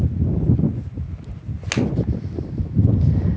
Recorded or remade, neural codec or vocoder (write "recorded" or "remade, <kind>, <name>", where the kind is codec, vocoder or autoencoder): recorded